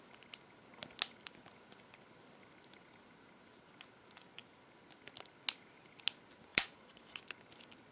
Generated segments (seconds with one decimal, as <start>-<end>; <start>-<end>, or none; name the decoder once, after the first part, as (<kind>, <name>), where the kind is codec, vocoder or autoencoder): 6.5-7.2 (vocoder, Vocos)